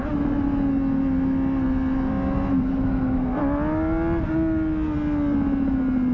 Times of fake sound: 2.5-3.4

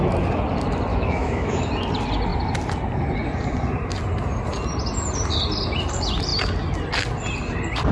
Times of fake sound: 0.9-1.7